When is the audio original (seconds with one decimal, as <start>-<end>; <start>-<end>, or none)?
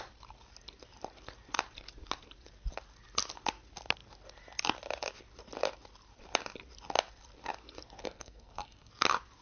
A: 0.0-8.0; 8.9-9.4